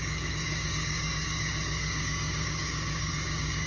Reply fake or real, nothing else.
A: fake